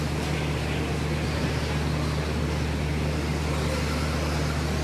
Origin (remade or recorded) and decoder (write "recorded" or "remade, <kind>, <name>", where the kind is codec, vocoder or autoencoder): recorded